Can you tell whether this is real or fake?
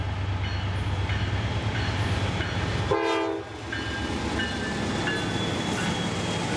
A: real